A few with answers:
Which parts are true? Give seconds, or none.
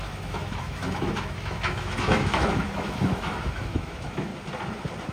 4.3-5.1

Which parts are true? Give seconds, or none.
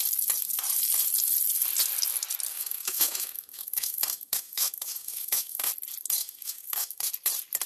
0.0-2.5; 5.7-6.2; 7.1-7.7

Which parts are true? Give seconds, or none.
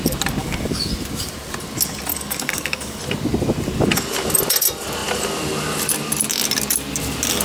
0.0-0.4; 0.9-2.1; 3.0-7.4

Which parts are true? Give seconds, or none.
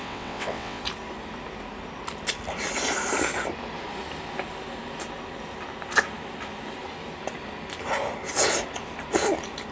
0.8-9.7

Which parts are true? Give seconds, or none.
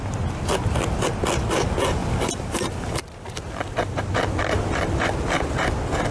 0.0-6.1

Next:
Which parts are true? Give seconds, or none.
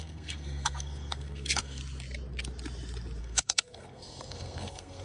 1.8-3.2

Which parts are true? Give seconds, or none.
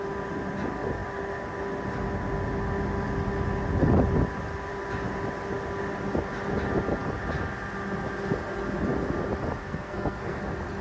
0.0-9.6; 10.4-10.8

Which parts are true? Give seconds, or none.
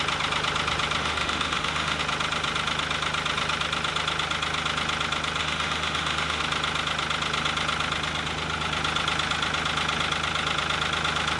0.0-1.0; 2.0-5.4; 6.4-11.4